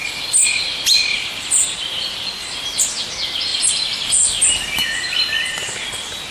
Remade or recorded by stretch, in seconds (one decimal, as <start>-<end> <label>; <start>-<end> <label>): 0.0-6.3 recorded

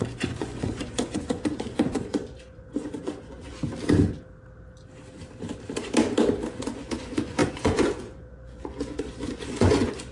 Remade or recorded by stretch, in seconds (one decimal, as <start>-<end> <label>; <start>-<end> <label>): 0.0-3.5 remade; 3.5-6.5 recorded; 6.5-10.1 remade